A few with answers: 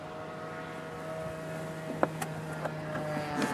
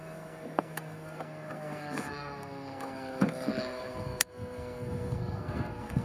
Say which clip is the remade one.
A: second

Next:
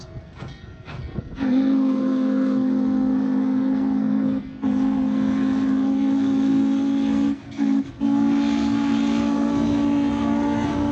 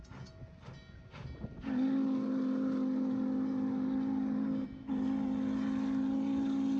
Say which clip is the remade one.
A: first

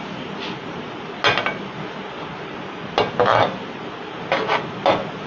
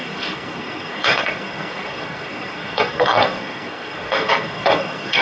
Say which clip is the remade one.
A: second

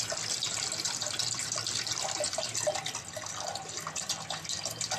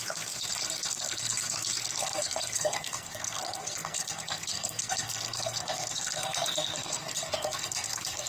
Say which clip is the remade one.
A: second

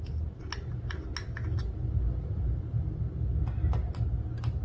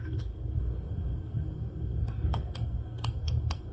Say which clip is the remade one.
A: second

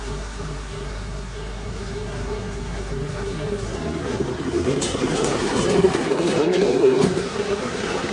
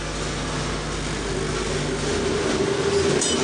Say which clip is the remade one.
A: first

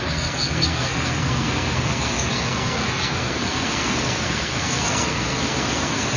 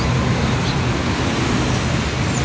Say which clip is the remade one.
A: first